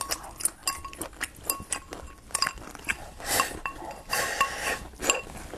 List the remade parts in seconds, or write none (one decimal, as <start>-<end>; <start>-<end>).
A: 2.9-4.3

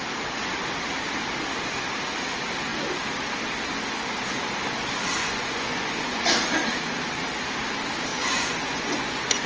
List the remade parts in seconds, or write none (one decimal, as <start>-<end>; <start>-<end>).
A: 5.2-6.3; 8.1-9.5

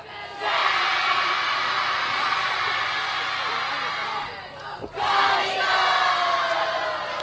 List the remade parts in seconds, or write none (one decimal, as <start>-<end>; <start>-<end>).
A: 0.6-1.2; 2.1-2.6

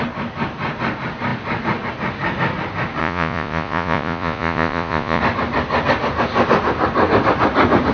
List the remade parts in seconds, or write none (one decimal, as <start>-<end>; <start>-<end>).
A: 3.0-5.2

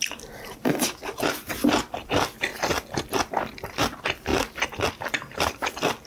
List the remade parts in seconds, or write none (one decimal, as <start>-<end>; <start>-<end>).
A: 0.0-2.5; 3.1-6.1

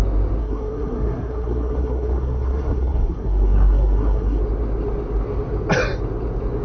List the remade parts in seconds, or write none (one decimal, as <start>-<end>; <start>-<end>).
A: 0.4-4.4

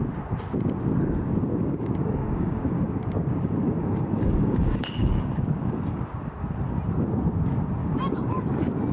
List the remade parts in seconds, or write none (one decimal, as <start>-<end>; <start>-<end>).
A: 1.5-6.3; 7.8-8.4

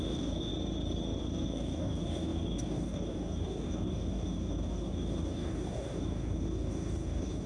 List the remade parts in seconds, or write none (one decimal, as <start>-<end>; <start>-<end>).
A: 0.0-0.5; 1.2-7.5